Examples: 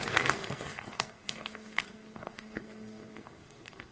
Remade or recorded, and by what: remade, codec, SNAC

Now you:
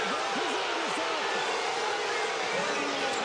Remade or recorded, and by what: recorded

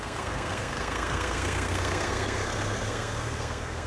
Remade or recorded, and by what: remade, codec, SNAC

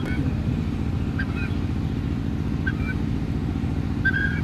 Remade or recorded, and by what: recorded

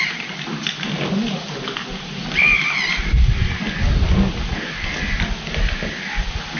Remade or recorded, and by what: recorded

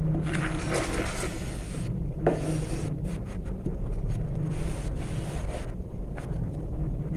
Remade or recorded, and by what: remade, vocoder, BigVGAN v2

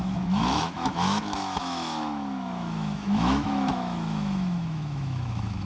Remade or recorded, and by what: remade, autoencoder, DAC-VAE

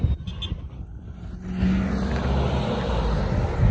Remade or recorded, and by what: recorded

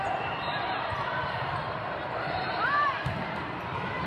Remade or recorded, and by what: remade, vocoder, BigVGAN v2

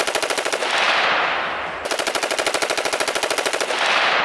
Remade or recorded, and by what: remade, vocoder, BigVGAN v2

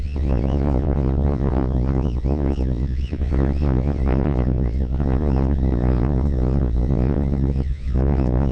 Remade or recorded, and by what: remade, vocoder, Vocos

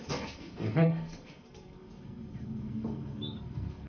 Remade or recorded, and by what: remade, codec, SNAC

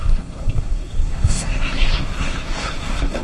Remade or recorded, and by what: remade, codec, SNAC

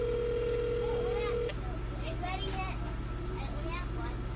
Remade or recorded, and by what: recorded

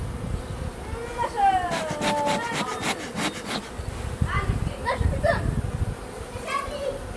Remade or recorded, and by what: recorded